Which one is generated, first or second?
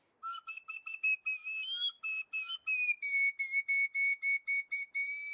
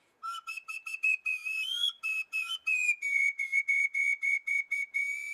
second